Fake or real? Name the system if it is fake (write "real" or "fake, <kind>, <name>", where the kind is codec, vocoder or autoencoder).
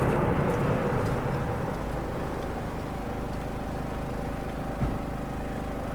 real